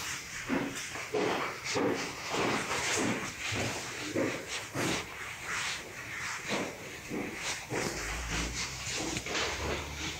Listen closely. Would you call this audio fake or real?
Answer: fake